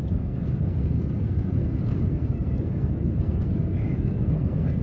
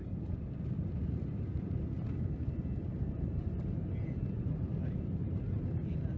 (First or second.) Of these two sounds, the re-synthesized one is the first